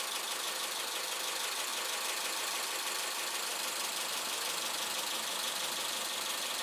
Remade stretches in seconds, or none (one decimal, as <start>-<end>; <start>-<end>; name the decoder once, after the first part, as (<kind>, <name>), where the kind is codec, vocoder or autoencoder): none